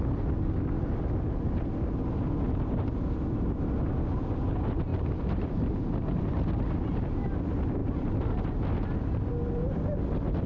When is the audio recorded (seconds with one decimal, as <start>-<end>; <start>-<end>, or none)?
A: 0.0-4.9; 6.2-10.5